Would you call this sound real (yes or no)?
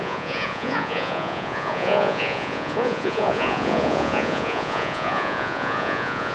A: no